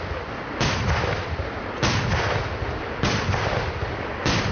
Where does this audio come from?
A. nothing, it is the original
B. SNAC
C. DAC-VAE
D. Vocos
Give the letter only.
A